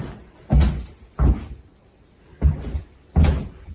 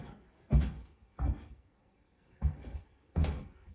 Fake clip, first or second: second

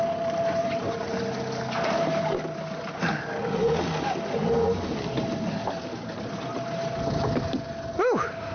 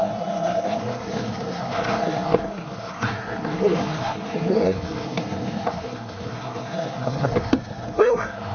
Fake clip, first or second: second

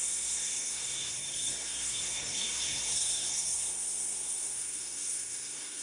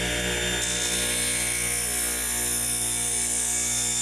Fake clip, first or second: first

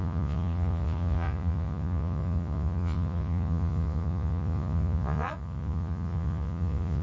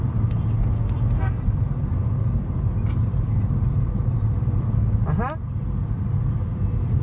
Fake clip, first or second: first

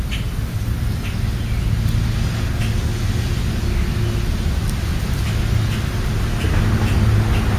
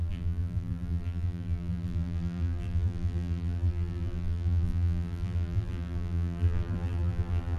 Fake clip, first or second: second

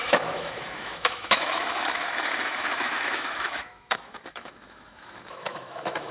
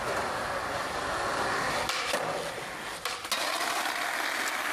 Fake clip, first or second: first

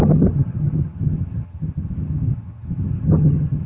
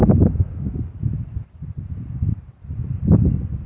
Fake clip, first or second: first